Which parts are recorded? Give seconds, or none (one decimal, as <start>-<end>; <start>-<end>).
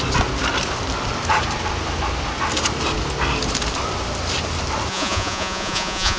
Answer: 0.0-4.9